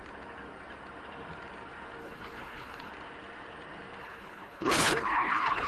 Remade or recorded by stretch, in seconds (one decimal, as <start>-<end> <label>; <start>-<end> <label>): 0.0-2.0 recorded; 2.0-2.9 remade; 2.9-4.0 recorded; 4.0-5.7 remade